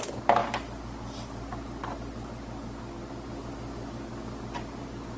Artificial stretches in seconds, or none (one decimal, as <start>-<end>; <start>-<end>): none

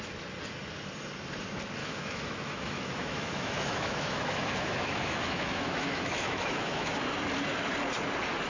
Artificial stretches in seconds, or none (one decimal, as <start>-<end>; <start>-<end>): 1.8-6.9

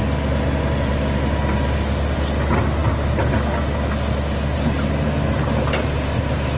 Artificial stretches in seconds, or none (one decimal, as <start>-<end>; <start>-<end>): none

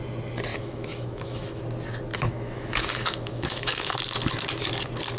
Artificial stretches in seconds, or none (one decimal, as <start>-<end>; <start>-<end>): 0.5-1.6; 2.1-4.0